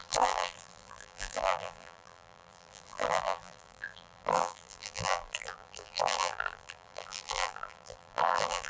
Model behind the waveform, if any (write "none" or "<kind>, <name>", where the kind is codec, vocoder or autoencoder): vocoder, BigVGAN v2